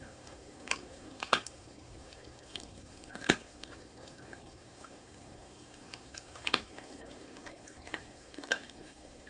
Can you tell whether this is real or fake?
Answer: fake